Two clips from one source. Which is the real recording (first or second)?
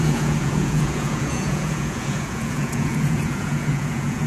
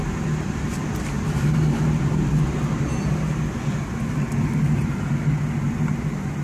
second